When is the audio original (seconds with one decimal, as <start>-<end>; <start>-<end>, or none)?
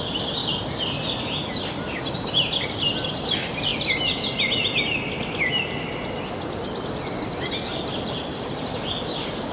0.0-9.5